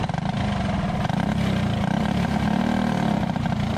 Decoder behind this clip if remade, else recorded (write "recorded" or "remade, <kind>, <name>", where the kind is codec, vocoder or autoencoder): recorded